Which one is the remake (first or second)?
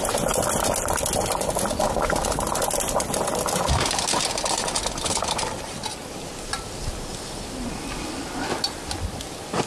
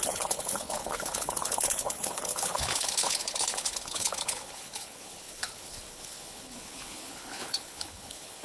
second